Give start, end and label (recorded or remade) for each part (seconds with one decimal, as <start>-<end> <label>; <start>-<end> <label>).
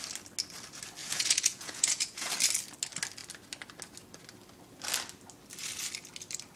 0.0-1.0 recorded; 1.0-2.3 remade; 2.3-6.6 recorded